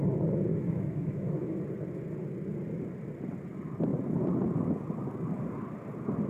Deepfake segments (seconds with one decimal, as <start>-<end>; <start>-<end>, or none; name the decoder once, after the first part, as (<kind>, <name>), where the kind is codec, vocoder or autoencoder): 0.5-1.6 (autoencoder, DAC-VAE)